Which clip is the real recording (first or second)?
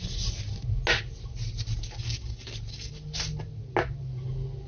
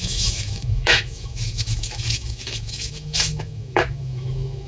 first